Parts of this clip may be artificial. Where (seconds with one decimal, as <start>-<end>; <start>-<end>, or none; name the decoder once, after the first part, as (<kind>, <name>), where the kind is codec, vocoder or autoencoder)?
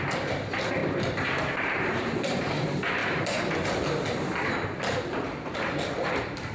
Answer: 0.8-2.4 (vocoder, BigVGAN v2); 3.0-3.8